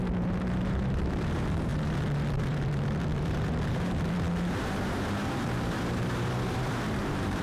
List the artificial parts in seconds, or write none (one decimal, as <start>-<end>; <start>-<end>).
0.0-7.4